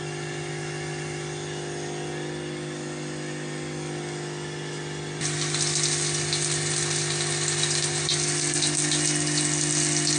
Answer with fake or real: real